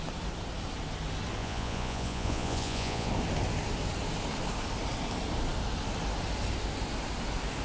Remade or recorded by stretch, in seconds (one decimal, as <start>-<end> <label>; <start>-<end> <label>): 0.0-1.4 recorded; 1.4-3.1 remade; 3.1-7.6 recorded